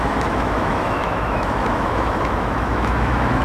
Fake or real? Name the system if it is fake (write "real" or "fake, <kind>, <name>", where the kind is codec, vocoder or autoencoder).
fake, autoencoder, DAC-VAE